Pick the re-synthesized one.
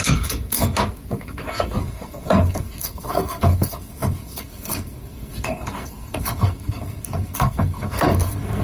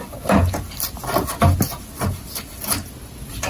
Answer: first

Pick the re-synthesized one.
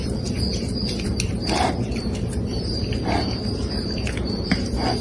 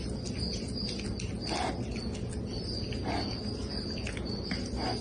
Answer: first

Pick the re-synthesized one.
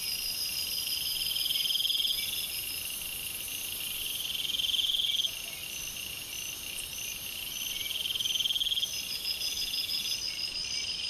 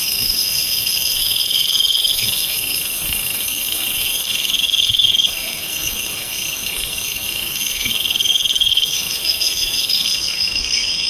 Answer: second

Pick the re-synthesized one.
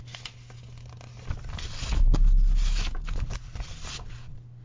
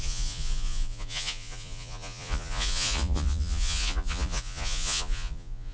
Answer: second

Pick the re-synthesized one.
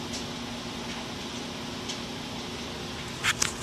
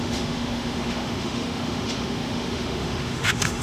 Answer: second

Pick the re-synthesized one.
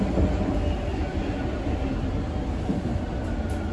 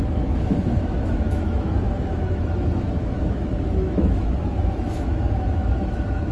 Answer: second